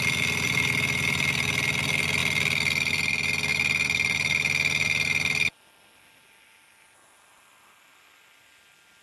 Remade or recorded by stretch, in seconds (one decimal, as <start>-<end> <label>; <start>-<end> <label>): 0.0-9.0 recorded

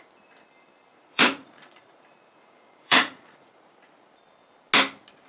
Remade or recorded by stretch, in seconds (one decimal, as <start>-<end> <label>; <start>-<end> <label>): 0.0-0.9 recorded; 0.9-4.1 remade; 4.1-5.3 recorded

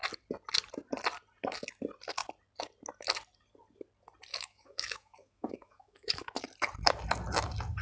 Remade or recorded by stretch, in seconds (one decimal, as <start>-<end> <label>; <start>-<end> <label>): 0.0-4.3 recorded; 4.3-6.4 remade; 6.4-7.8 recorded

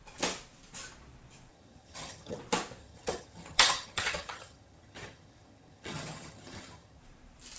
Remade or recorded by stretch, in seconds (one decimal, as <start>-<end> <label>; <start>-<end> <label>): 0.0-1.5 recorded; 1.5-2.4 remade; 2.4-2.8 recorded; 2.8-7.0 remade; 7.0-7.6 recorded

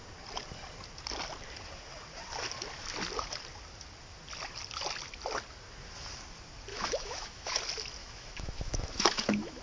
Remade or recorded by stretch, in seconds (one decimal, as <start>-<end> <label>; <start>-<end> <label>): 0.0-6.7 recorded; 6.7-7.6 remade; 7.6-8.0 recorded; 8.0-9.6 remade

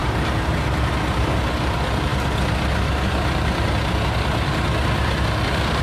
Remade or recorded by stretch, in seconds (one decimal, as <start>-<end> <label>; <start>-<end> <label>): 0.0-0.5 remade; 0.5-5.8 recorded

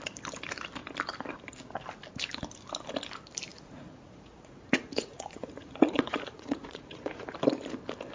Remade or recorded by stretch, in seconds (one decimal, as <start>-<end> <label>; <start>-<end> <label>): 0.0-3.5 recorded; 3.5-7.4 remade; 7.4-8.1 recorded

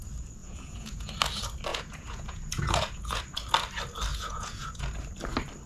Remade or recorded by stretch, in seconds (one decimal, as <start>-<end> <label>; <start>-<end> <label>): 0.0-0.4 recorded; 0.4-1.1 remade; 1.1-1.7 recorded; 1.7-3.2 remade; 3.2-4.1 recorded; 4.1-4.8 remade; 4.8-5.7 recorded